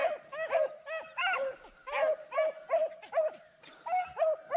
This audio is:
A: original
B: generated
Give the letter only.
A